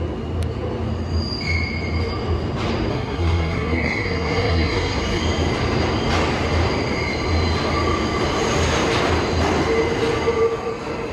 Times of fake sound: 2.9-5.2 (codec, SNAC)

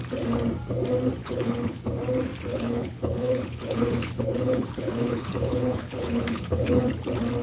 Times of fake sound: 1.2-1.8 (codec, HILCodec); 2.5-6.8

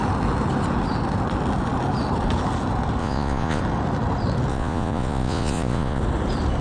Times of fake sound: 3.0-3.6 (vocoder, Vocos); 4.5-6.0

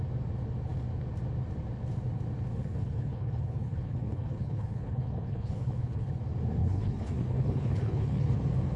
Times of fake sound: 2.5-6.1 (codec, HILCodec); 6.6-8.4

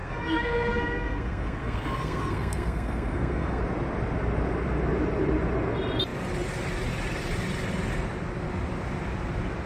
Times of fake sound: 0.0-3.6 (codec, SNAC)

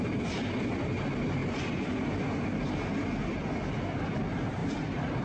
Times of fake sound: 1.4-2.1 (vocoder, BigVGAN v2); 3.2-4.1; 4.6-5.2